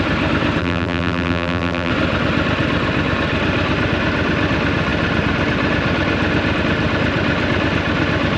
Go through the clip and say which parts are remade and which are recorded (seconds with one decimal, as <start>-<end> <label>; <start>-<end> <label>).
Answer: 0.0-0.6 recorded; 0.6-1.9 remade; 1.9-8.4 recorded